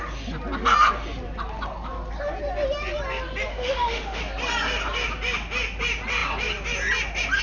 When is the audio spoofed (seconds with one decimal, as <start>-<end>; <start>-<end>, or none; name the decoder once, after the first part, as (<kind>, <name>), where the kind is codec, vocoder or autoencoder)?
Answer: 3.5-4.2 (autoencoder, DAC-VAE)